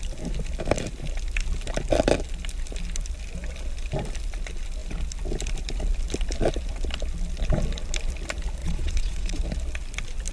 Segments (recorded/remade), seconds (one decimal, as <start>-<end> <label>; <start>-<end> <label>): 0.0-8.6 recorded; 8.6-9.4 remade; 9.4-10.3 recorded